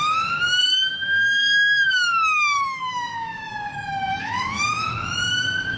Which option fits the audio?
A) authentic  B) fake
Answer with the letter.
B